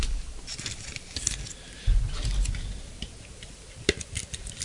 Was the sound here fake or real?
real